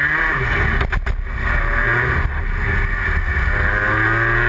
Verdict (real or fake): real